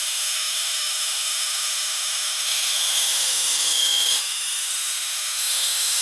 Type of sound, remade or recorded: remade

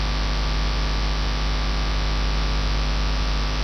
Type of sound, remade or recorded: recorded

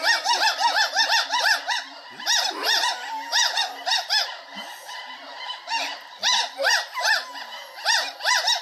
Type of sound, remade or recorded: recorded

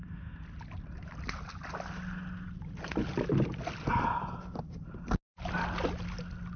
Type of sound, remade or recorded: recorded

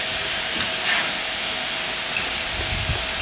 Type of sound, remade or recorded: recorded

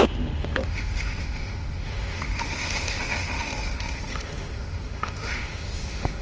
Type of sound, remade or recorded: remade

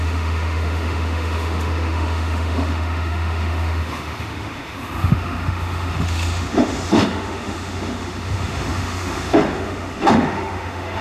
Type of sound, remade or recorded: remade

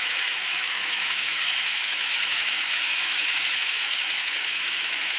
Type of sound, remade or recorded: remade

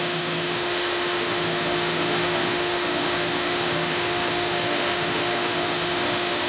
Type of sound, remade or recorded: remade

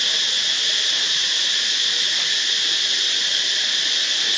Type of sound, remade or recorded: recorded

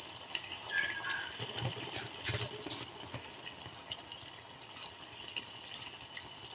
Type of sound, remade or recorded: recorded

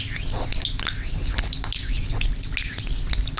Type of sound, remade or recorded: recorded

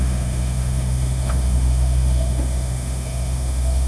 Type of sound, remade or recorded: remade